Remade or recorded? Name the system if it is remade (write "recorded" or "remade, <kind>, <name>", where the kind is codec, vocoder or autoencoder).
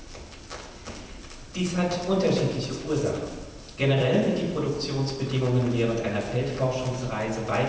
recorded